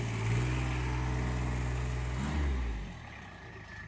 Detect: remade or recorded recorded